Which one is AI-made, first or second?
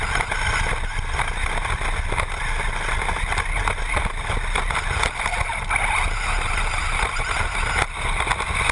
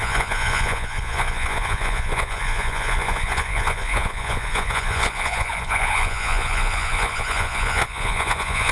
second